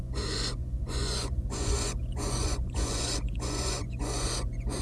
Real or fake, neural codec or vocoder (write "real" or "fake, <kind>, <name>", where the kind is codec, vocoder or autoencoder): fake, vocoder, Vocos